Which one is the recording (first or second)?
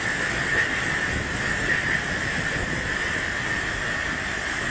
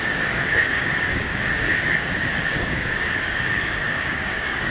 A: first